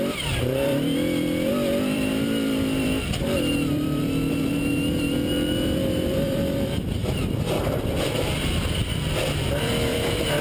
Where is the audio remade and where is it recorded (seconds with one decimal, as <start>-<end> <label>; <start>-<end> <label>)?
0.0-7.0 remade; 7.0-8.4 recorded; 8.4-10.4 remade